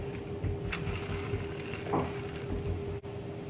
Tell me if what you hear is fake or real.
real